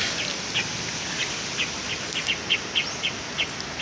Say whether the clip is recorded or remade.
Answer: recorded